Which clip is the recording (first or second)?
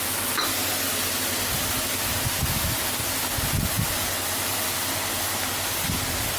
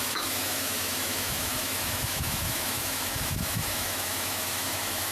first